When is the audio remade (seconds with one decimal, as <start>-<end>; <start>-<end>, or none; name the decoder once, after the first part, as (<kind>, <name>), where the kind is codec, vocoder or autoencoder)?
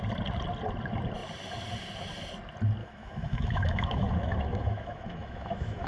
2.8-5.9 (autoencoder, DAC-VAE)